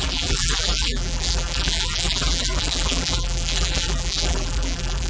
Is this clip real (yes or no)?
no